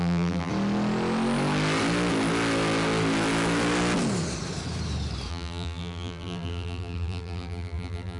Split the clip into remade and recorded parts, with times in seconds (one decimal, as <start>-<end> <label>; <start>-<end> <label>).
0.0-0.5 remade; 0.5-5.3 recorded; 5.3-8.2 remade